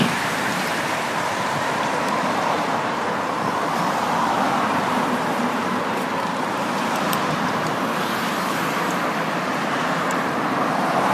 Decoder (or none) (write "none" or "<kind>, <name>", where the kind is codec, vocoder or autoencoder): vocoder, BigVGAN v2